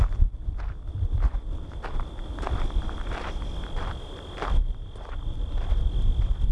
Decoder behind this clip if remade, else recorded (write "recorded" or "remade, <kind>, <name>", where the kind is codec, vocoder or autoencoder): recorded